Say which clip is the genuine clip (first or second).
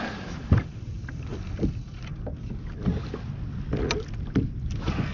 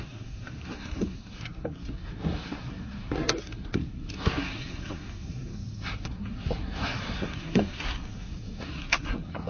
first